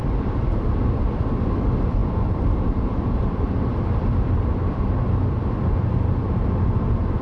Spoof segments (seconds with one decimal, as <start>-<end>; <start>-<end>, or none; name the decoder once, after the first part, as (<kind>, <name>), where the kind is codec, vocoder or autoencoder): 0.0-7.2 (vocoder, BigVGAN v2)